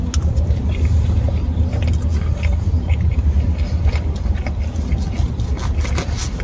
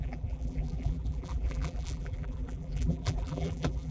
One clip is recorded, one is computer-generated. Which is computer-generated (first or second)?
second